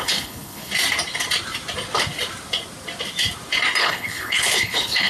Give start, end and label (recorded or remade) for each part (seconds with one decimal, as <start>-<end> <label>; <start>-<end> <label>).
0.0-0.7 remade; 0.7-3.8 recorded; 3.8-5.1 remade